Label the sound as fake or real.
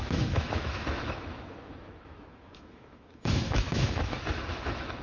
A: fake